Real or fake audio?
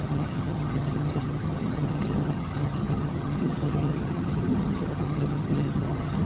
fake